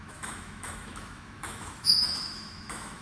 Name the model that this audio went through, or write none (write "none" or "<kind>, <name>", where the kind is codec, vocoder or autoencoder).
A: autoencoder, DAC-VAE